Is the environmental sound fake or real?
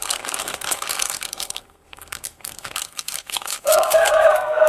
fake